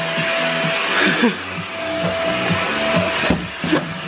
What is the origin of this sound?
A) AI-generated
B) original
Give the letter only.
B